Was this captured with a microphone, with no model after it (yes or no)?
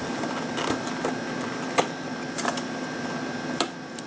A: yes